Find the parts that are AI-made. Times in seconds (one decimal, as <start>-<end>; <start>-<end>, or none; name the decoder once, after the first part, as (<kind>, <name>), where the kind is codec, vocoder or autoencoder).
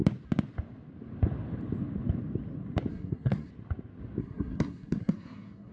2.9-3.5 (codec, SNAC); 4.2-5.7